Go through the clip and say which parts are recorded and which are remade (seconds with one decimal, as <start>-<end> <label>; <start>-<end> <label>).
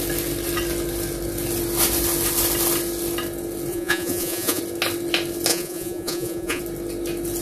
0.0-3.7 recorded; 3.7-4.6 remade; 4.6-5.5 recorded; 5.5-6.6 remade; 6.6-7.4 recorded